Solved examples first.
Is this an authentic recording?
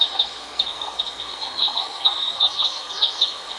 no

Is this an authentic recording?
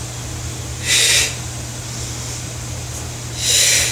yes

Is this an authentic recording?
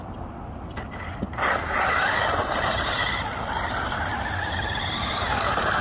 yes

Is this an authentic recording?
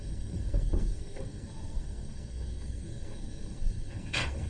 no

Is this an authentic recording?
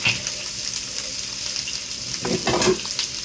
yes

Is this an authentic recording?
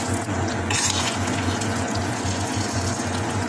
no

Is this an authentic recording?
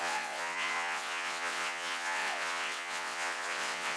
no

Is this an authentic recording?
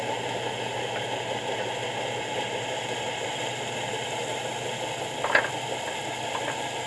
yes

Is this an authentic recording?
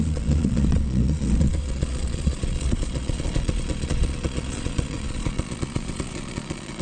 no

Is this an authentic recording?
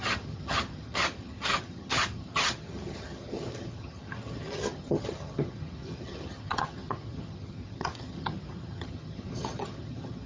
no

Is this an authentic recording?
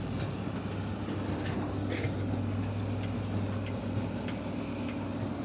yes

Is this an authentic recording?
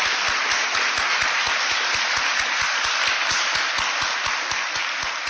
yes